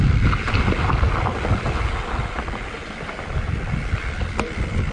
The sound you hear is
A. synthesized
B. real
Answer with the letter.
A